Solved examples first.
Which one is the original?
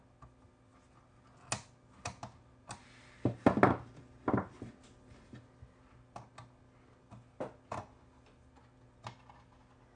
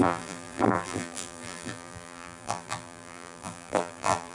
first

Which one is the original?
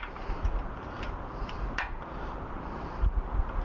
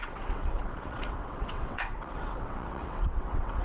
first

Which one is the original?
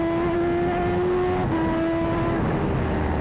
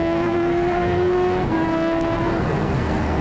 first